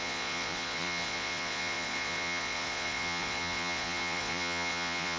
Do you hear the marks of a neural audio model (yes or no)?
yes